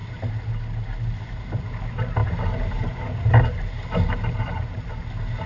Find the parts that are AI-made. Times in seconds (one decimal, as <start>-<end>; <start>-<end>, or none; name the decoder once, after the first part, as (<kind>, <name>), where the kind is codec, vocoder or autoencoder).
none